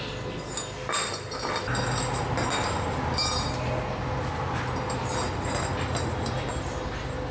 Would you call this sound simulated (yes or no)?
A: no